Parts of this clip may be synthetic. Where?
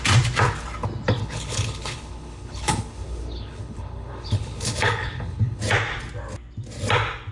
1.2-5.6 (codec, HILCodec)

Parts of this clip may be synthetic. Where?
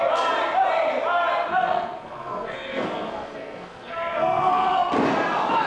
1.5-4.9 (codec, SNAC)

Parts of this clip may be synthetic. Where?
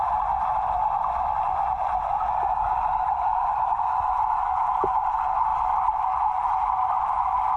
none